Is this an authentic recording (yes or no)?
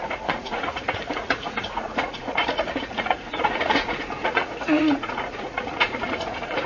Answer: no